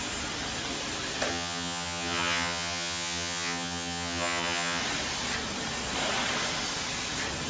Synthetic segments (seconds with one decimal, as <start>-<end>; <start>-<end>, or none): 1.3-4.8